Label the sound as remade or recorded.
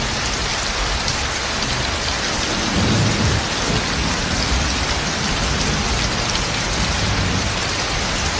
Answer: recorded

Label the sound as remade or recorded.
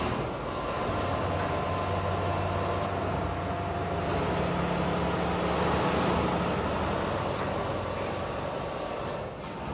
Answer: recorded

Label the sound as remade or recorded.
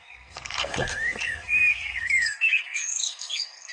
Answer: remade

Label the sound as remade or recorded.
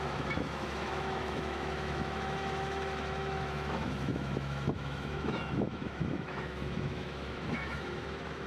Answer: remade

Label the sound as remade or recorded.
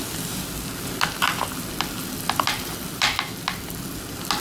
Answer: recorded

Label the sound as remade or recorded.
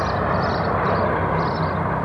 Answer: recorded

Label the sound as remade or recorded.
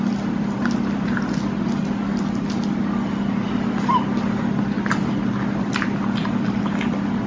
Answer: recorded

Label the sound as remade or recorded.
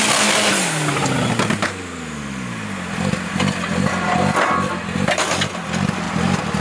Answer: recorded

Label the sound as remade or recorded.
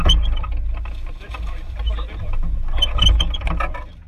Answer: recorded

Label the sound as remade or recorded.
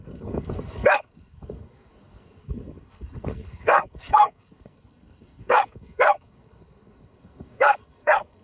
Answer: remade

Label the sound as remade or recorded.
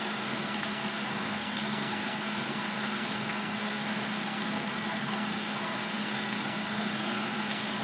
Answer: remade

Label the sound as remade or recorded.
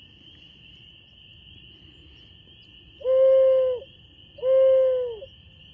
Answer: recorded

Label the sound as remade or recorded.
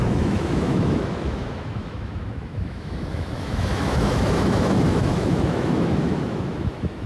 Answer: remade